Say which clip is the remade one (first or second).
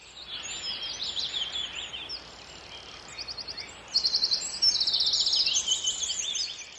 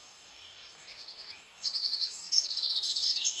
second